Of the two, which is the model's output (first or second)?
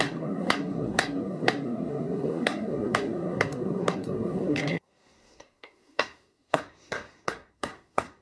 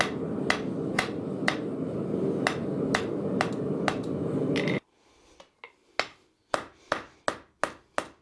first